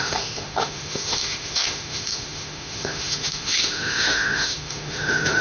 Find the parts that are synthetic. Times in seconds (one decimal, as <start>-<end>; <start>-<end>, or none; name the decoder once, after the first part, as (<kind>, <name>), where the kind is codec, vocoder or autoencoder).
0.0-5.4 (autoencoder, DAC-VAE)